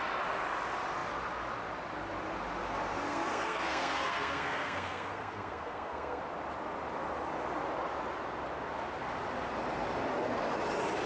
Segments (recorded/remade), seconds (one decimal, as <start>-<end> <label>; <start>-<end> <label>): 0.0-3.0 recorded; 3.0-6.2 remade; 6.2-11.1 recorded